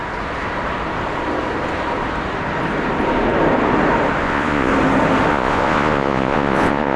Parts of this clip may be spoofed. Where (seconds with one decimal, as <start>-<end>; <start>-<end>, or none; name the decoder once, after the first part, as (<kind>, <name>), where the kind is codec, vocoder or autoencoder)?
4.2-4.7 (vocoder, Vocos); 5.3-7.0